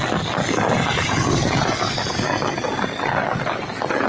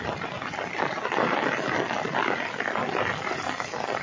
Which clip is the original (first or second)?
first